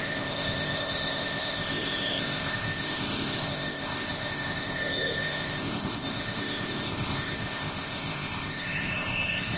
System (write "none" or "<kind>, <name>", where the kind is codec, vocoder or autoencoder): codec, ZipCodec